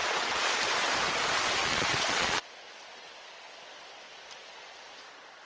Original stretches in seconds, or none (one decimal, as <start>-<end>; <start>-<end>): 0.6-1.6; 3.7-4.4; 5.1-5.5